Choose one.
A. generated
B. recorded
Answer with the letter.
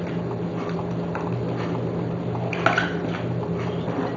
B